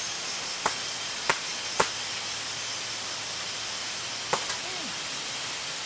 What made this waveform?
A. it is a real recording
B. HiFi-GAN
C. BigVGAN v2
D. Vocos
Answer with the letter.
A